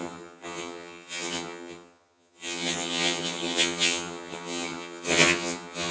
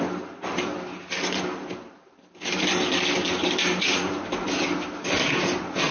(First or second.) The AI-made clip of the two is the first